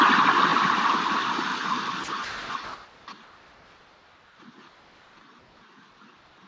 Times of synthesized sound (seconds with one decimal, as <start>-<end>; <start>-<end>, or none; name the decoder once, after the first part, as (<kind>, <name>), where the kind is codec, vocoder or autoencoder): none